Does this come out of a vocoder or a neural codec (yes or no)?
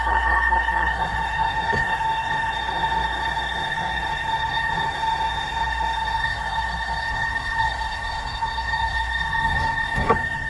yes